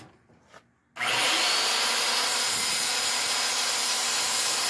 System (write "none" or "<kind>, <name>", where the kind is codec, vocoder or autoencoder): none